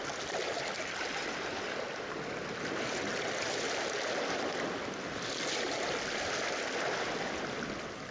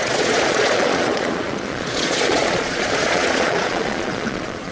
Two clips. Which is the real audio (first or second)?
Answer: first